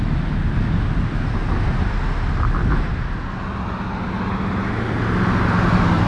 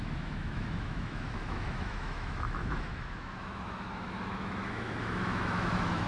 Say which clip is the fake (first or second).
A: second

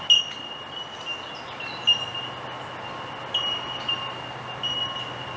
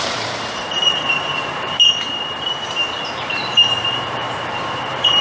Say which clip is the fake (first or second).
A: second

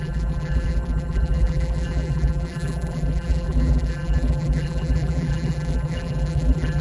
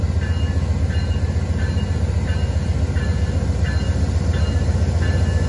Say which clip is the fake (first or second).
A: first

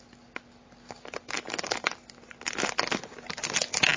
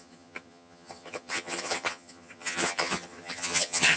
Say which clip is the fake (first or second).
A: second